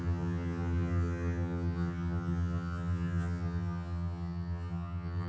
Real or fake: fake